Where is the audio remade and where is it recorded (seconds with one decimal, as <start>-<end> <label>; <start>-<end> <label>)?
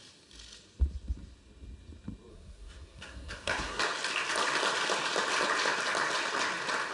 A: 0.0-2.3 recorded; 2.3-3.8 remade; 3.8-6.9 recorded